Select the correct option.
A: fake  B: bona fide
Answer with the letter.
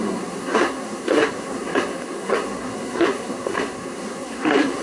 A